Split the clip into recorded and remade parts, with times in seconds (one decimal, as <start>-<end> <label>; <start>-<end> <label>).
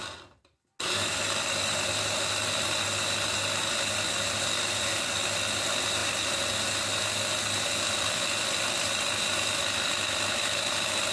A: 0.0-11.1 recorded